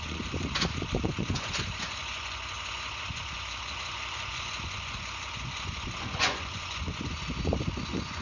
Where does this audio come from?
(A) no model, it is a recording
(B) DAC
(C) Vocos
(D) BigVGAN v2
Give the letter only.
C